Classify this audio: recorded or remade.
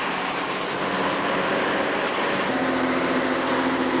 recorded